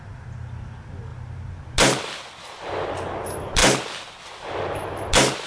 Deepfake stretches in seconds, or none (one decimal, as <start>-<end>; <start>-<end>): none